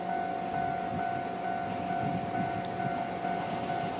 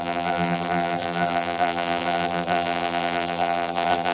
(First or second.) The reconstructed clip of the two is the second